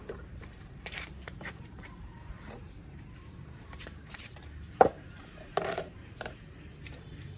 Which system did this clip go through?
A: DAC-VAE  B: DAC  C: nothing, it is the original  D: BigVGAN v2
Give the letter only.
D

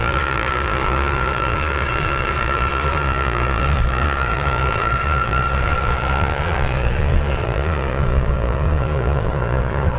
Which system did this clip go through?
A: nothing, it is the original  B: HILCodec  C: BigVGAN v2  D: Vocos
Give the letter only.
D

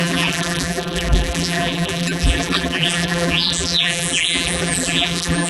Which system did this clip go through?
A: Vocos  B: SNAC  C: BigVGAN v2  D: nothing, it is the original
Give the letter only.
C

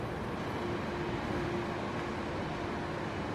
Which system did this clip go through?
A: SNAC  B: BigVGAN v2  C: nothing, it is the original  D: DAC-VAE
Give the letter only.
C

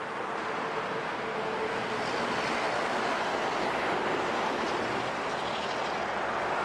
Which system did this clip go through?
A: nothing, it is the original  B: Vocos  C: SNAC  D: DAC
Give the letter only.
A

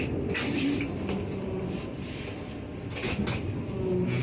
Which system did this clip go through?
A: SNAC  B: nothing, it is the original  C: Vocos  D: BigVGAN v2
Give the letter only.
B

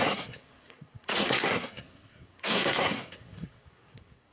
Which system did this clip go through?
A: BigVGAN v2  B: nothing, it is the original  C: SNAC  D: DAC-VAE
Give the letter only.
C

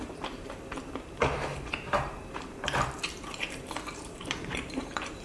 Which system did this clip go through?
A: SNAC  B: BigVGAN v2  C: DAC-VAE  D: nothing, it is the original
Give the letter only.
B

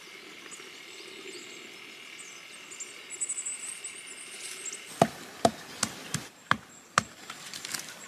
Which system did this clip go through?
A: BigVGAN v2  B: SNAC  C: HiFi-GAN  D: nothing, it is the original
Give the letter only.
D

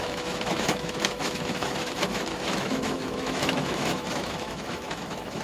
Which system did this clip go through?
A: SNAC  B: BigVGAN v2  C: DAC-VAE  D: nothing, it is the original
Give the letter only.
C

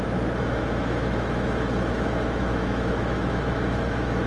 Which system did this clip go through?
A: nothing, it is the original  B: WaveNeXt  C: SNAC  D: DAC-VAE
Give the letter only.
D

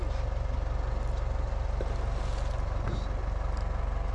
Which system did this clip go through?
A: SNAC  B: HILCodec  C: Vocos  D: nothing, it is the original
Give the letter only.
D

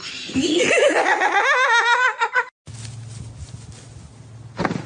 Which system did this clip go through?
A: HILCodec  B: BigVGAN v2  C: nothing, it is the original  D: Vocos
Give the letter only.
C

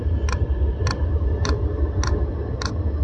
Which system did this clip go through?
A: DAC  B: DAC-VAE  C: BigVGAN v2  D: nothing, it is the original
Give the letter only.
D